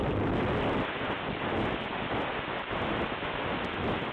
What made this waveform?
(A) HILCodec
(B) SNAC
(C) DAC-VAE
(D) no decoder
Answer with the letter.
D